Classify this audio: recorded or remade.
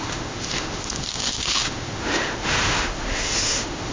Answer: remade